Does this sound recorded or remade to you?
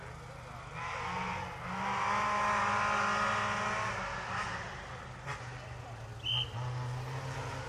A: recorded